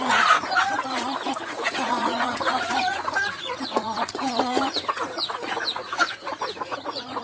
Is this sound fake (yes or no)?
yes